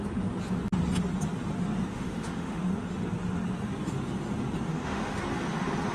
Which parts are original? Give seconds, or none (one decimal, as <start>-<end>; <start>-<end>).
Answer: 0.0-1.9; 2.6-4.7; 5.2-5.9